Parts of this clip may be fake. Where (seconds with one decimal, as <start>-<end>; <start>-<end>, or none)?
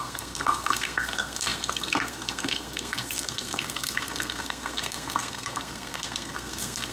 0.0-6.9